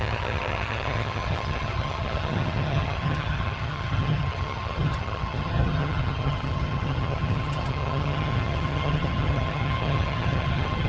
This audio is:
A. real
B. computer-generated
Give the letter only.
B